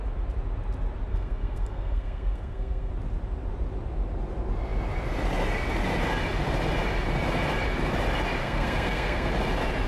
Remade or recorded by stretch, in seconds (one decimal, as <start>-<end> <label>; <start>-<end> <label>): 0.0-1.1 recorded; 1.1-2.9 remade; 2.9-8.4 recorded; 8.4-9.3 remade; 9.3-9.9 recorded

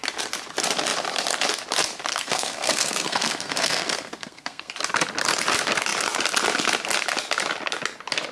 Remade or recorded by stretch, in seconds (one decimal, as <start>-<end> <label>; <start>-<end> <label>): 0.0-2.1 recorded; 2.1-4.7 remade; 4.7-8.3 recorded

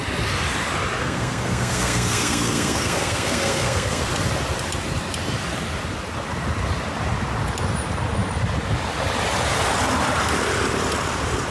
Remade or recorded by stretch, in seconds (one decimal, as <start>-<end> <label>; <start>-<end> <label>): 0.0-1.0 recorded; 1.0-4.1 remade; 4.1-11.5 recorded

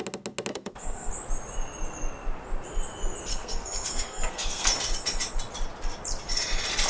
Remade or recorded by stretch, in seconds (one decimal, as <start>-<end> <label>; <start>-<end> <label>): 0.0-0.5 recorded; 0.5-1.1 remade; 1.1-3.3 recorded; 3.3-4.7 remade; 4.7-6.9 recorded

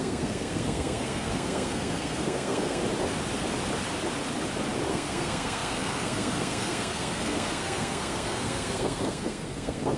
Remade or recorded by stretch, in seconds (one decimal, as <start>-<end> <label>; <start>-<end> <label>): 0.0-2.8 remade; 2.8-4.9 recorded; 4.9-10.0 remade

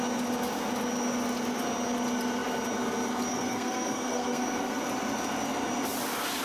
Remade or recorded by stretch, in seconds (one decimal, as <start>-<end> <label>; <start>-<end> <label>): 0.0-3.3 recorded; 3.3-4.8 remade; 4.8-6.4 recorded

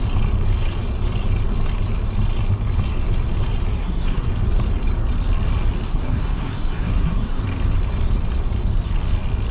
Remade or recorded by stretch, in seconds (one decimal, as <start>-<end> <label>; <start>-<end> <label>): 0.0-3.7 recorded; 3.7-4.3 remade; 4.3-5.9 recorded; 5.9-7.4 remade; 7.4-9.5 recorded

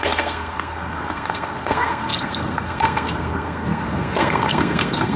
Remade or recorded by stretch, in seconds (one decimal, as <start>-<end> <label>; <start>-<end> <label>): 0.0-5.2 remade